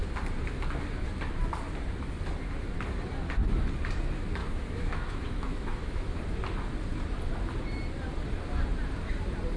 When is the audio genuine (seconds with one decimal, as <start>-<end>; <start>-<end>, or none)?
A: 0.0-4.4; 6.2-9.6